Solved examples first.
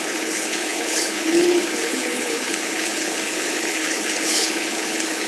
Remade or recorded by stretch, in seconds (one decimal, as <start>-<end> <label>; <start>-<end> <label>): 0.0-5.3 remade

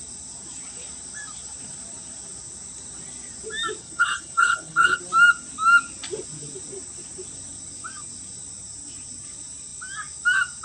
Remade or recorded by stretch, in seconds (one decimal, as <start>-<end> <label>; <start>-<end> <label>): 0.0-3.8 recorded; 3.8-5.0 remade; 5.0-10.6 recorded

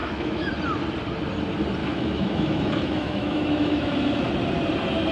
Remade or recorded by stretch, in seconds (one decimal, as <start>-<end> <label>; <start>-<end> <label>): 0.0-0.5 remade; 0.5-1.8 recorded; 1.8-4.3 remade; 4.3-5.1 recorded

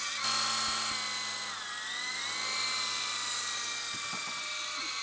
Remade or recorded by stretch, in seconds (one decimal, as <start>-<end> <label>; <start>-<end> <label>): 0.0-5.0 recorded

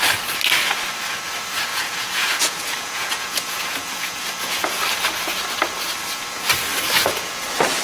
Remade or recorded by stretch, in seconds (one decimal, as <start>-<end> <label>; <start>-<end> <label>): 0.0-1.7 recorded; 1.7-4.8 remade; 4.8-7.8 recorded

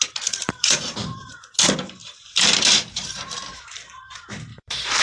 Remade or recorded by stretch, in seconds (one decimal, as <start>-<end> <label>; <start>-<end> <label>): 0.0-0.4 recorded; 0.4-1.4 remade; 1.4-2.0 recorded; 2.0-4.0 remade; 4.0-4.5 recorded; 4.5-5.0 remade

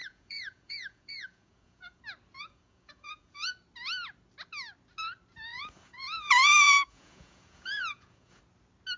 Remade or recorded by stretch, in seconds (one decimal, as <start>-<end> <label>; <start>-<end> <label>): 0.0-2.0 remade; 2.0-2.4 recorded; 2.4-3.5 remade; 3.5-5.5 recorded; 5.5-8.4 remade; 8.4-9.0 recorded